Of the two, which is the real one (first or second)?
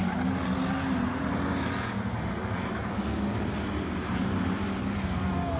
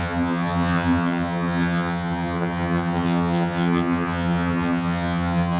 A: first